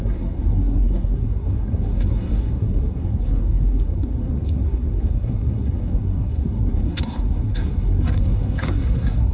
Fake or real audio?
fake